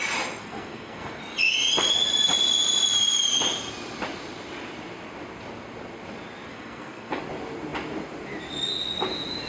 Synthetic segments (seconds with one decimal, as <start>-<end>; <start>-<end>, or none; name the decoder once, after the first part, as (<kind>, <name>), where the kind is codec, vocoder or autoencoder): 0.4-1.2 (codec, SNAC); 6.5-7.2

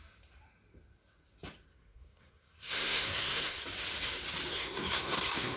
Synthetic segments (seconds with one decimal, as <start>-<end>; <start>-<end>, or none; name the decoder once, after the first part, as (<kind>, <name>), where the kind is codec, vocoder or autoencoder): 1.7-3.6 (codec, SNAC); 4.5-5.6

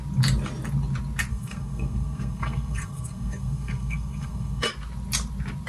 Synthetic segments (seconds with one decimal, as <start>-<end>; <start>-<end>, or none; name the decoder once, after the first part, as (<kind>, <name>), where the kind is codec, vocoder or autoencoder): 1.3-4.7 (codec, SNAC)

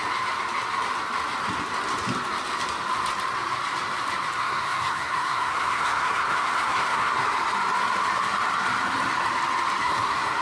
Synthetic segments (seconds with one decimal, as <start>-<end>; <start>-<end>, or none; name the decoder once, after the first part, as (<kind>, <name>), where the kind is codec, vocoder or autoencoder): 4.4-7.1 (codec, SNAC); 9.8-10.4